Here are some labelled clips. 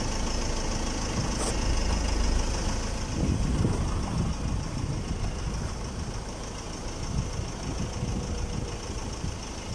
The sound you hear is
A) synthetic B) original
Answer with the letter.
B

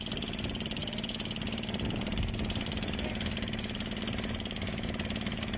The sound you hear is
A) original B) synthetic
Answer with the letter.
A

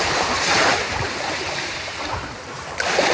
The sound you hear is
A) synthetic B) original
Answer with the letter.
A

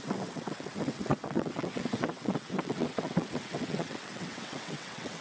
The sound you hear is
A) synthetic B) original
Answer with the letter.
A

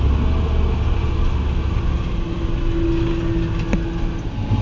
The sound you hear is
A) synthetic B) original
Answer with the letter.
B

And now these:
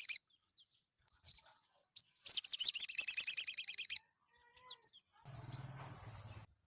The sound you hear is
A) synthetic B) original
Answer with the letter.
B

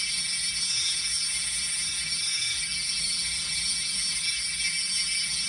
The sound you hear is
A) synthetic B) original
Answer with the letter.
A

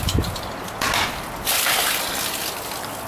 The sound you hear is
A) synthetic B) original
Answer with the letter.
B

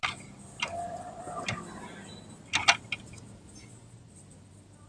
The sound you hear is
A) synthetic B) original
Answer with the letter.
B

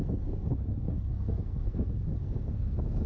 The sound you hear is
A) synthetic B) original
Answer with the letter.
A